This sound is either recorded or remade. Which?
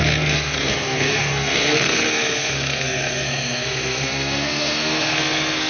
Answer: remade